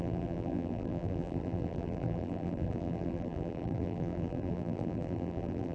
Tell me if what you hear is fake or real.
fake